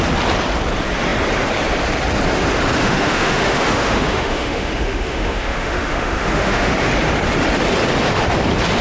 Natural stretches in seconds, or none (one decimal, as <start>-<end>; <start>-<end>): 0.0-2.8; 6.7-8.8